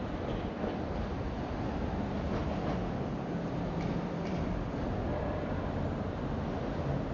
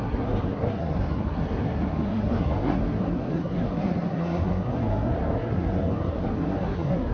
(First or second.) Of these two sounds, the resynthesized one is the second